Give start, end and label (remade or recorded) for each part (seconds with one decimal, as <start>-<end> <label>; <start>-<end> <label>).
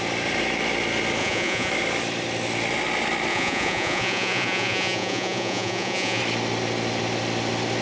0.0-1.2 recorded; 1.2-1.7 remade; 1.7-3.3 recorded; 3.3-6.2 remade; 6.2-7.8 recorded